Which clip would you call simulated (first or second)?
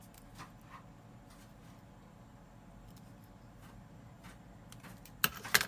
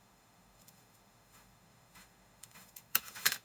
second